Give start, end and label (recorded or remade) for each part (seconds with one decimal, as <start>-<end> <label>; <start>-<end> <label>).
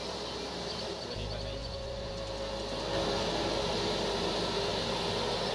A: 0.0-1.6 recorded; 1.6-2.1 remade; 2.1-5.5 recorded